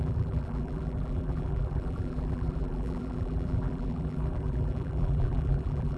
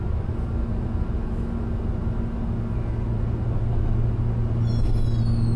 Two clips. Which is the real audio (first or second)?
second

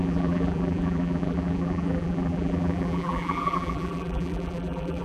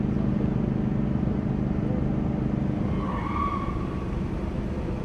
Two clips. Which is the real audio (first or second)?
second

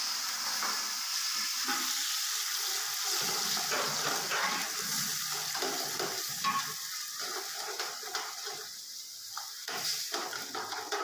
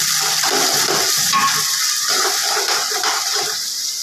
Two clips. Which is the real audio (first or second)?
first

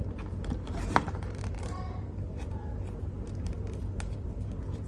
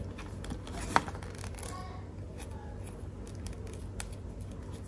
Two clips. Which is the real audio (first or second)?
second